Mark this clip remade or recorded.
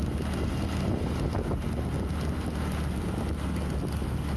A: recorded